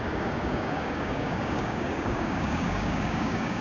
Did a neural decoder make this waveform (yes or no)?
yes